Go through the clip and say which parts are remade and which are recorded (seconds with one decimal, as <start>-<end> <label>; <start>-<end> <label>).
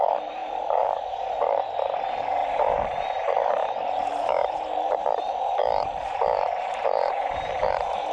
0.0-8.1 remade